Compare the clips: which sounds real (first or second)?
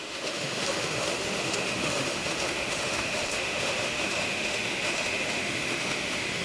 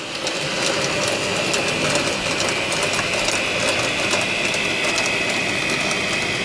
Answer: second